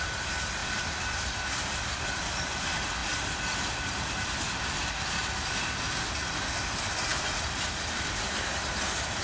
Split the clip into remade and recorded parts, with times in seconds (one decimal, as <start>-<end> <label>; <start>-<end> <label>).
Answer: 0.0-0.6 recorded; 0.6-1.8 remade; 1.8-7.1 recorded; 7.1-8.2 remade; 8.2-9.2 recorded